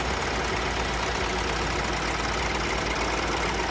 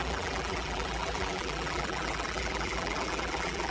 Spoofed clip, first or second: second